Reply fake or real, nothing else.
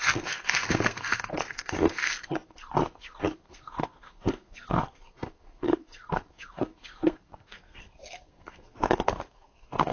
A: fake